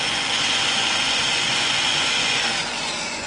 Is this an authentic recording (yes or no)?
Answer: no